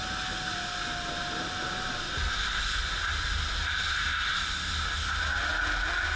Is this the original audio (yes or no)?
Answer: yes